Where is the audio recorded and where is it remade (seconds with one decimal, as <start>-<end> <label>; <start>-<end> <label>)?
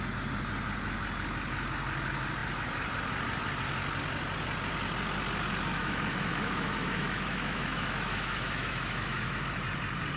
0.0-5.7 recorded; 5.7-9.4 remade; 9.4-10.2 recorded